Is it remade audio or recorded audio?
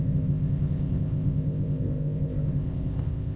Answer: remade